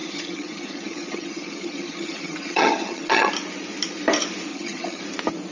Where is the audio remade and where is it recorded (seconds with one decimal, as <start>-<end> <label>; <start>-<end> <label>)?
0.0-3.3 remade; 3.3-4.5 recorded; 4.5-5.0 remade; 5.0-5.5 recorded